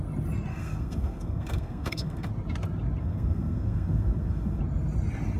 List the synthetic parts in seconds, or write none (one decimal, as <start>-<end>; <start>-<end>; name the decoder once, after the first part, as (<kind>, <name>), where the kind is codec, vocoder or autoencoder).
0.5-2.3 (codec, SNAC); 3.0-4.6